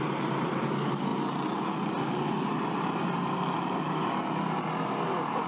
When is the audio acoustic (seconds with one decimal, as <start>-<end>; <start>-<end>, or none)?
0.0-5.5